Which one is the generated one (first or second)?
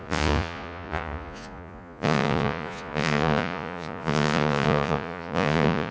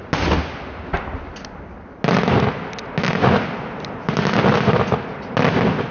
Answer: first